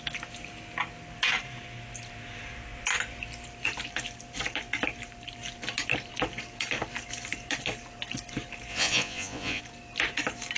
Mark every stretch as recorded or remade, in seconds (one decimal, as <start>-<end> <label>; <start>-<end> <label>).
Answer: 0.0-8.7 recorded; 8.7-9.6 remade; 9.6-10.6 recorded